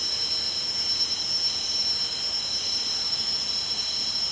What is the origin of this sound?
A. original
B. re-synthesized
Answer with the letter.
A